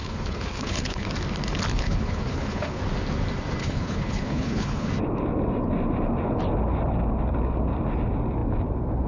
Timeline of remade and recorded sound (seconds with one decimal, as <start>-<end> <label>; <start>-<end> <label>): 0.0-1.1 remade; 1.1-1.7 recorded; 1.7-2.8 remade; 2.8-3.6 recorded; 3.6-4.9 remade; 4.9-9.1 recorded